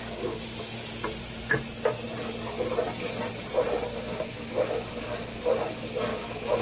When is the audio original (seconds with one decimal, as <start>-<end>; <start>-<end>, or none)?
0.0-6.1